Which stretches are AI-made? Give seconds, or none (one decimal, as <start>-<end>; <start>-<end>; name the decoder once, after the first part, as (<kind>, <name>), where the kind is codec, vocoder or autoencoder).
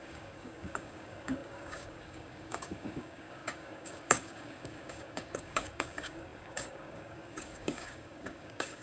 0.0-8.8 (codec, DAC)